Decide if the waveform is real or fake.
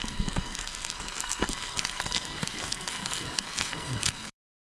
fake